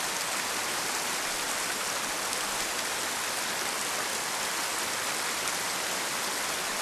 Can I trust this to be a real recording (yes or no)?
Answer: yes